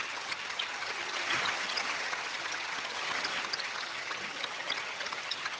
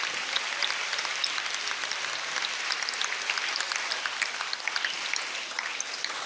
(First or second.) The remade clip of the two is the first